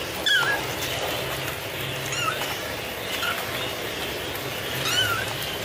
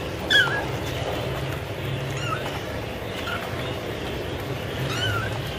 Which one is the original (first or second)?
first